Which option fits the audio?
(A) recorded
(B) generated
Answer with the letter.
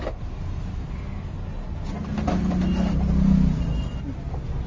A